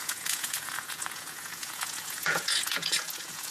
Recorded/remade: remade